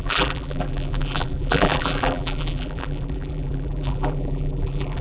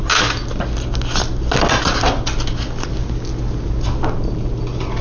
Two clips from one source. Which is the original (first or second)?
second